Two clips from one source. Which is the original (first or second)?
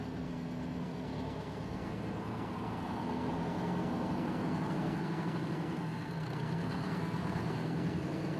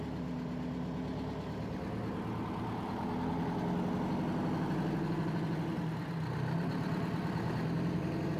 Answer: second